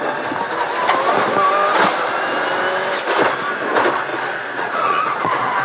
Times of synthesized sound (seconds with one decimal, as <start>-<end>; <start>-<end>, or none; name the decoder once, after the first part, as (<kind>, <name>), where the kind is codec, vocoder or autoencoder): 4.1-5.6 (vocoder, Vocos)